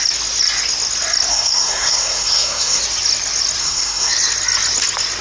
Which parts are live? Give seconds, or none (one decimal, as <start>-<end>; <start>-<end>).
0.0-1.3; 2.8-3.6; 4.1-5.2